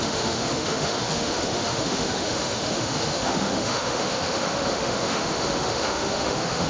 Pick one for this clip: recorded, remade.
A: remade